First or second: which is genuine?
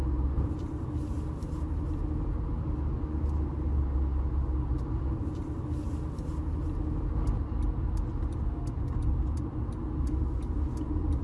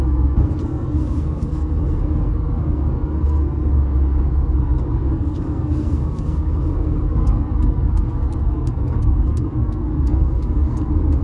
first